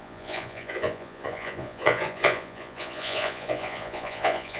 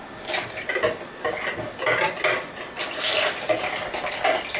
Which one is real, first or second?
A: second